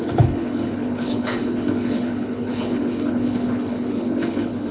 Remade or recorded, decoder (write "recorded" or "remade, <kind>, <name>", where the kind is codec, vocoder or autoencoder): remade, codec, HILCodec